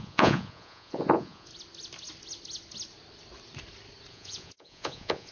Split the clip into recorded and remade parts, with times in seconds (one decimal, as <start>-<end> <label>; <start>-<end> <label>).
0.0-1.5 remade; 1.5-4.1 recorded; 4.1-5.3 remade